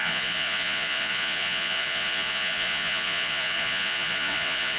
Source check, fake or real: fake